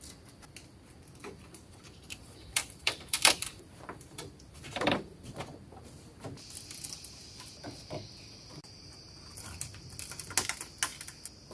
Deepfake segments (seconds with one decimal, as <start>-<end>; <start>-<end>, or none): 1.2-5.4